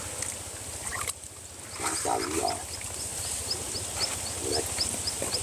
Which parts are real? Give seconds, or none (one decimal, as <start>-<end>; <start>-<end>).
0.0-5.4